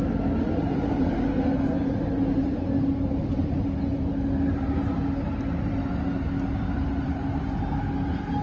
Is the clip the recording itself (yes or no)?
yes